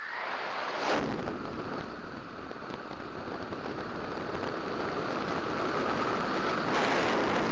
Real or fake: real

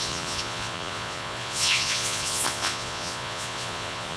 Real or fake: fake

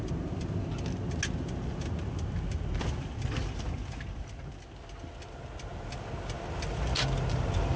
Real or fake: real